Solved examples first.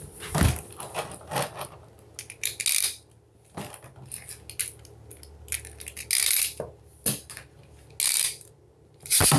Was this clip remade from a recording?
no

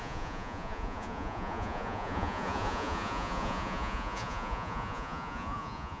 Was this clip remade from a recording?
yes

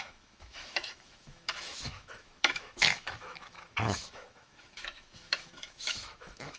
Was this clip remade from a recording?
yes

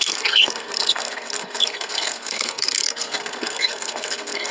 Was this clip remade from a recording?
yes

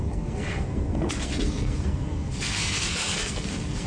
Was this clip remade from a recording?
yes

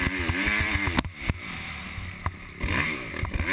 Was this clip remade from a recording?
no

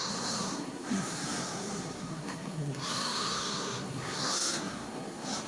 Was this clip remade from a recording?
yes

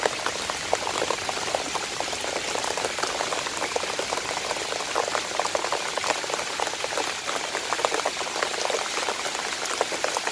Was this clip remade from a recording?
no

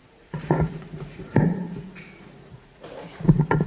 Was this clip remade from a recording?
yes